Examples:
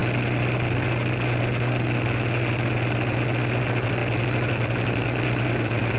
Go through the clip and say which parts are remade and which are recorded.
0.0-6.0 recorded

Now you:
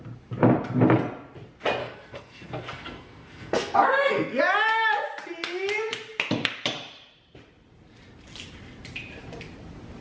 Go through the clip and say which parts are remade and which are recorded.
0.0-1.8 recorded; 1.8-4.4 remade; 4.4-10.0 recorded

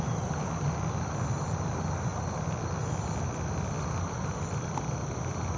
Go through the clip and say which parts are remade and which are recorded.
0.0-5.6 recorded

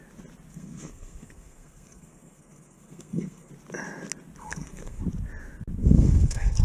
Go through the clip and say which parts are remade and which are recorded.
0.0-0.5 recorded; 0.5-3.5 remade; 3.5-4.4 recorded; 4.4-5.0 remade; 5.0-5.8 recorded; 5.8-6.6 remade

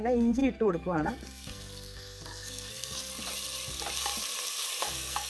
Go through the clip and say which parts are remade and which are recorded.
0.0-3.1 remade; 3.1-4.8 recorded; 4.8-5.3 remade

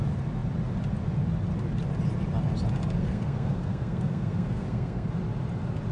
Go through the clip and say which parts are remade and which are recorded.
0.0-3.0 recorded; 3.0-5.1 remade; 5.1-5.9 recorded

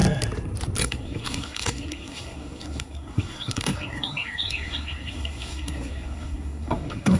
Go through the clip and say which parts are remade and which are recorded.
0.0-0.8 recorded; 0.8-7.2 remade

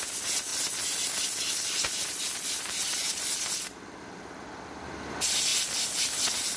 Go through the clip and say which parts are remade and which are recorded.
0.0-6.6 recorded